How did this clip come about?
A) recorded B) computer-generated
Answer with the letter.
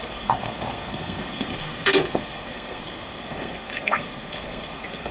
B